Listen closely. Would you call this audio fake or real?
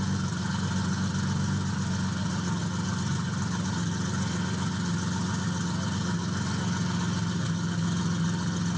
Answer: real